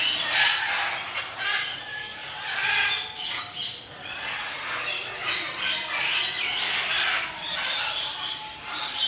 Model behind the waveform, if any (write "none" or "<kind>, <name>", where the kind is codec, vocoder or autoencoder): none